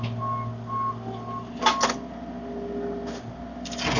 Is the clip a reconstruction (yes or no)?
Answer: no